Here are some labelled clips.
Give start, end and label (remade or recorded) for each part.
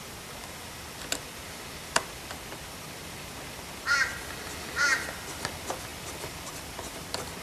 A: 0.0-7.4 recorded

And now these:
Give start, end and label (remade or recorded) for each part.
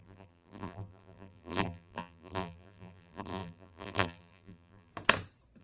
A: 0.0-4.9 remade; 4.9-5.6 recorded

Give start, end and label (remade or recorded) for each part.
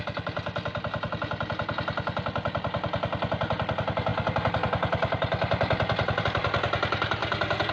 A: 0.0-7.7 recorded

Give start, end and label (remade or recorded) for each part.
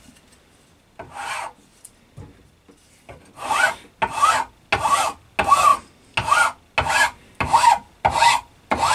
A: 0.0-8.9 recorded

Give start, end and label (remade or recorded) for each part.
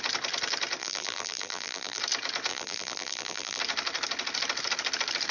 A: 0.0-0.8 recorded; 0.8-2.0 remade; 2.0-2.5 recorded; 2.5-3.6 remade; 3.6-5.3 recorded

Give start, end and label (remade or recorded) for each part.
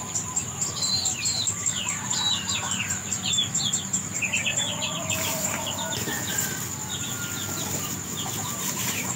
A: 0.0-6.1 remade; 6.1-8.3 recorded; 8.3-9.2 remade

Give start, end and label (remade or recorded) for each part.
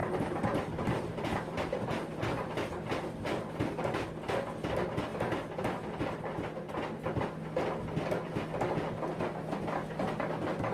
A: 0.0-2.0 remade; 2.0-10.7 recorded